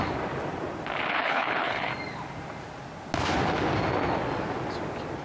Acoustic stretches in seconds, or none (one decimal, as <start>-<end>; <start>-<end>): 0.0-1.1; 1.9-5.2